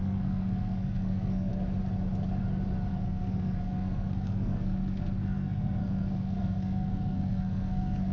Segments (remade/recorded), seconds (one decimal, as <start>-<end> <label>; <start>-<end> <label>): 0.0-1.5 remade; 1.5-2.9 recorded; 2.9-8.1 remade